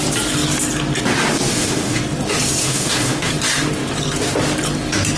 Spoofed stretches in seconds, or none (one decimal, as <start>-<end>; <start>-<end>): 1.5-2.0; 2.6-3.3